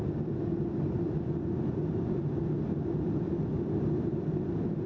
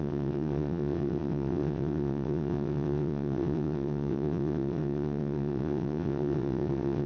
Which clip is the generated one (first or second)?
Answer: second